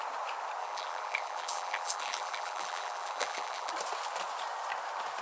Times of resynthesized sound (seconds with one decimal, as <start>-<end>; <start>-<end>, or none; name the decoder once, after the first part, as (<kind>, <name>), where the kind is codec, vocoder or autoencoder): 0.6-3.7 (vocoder, BigVGAN v2)